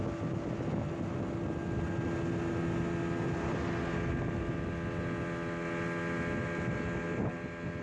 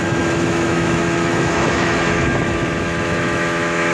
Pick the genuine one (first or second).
first